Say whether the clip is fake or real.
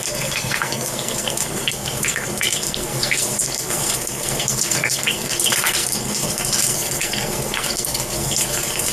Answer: fake